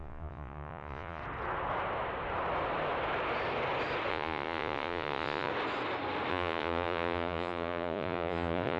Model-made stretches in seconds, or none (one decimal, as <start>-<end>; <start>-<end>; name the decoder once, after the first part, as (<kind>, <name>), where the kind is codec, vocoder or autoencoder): 0.0-1.2 (vocoder, Vocos); 4.1-5.5; 6.3-8.8